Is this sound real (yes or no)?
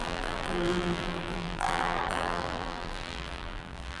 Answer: no